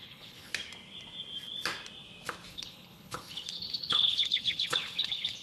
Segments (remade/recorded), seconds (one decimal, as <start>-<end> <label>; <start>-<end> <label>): 0.0-0.5 remade; 0.5-2.5 recorded; 2.5-5.4 remade